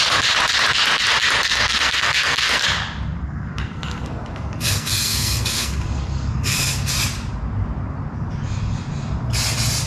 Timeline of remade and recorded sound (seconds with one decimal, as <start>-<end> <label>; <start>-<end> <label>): 0.0-1.5 recorded; 1.5-2.6 remade; 2.6-3.2 recorded; 3.2-6.9 remade; 6.9-9.9 recorded